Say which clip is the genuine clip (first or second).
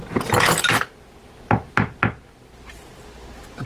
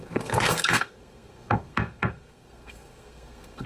first